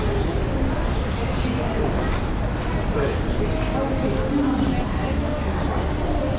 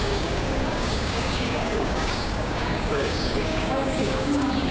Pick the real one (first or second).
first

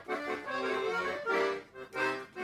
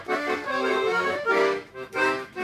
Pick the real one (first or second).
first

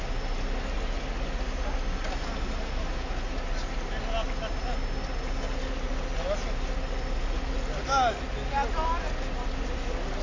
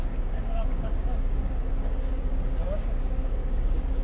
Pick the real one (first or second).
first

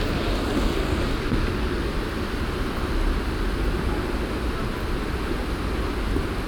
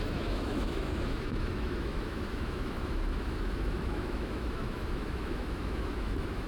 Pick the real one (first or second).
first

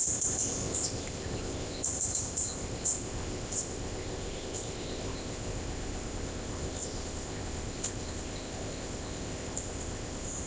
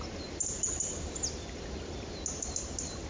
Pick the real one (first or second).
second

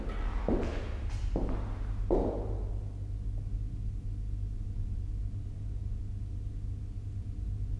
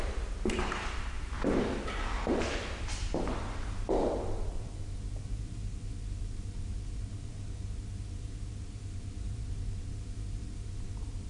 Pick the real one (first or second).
first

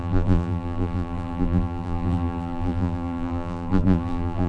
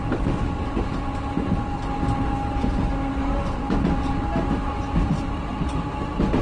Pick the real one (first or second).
second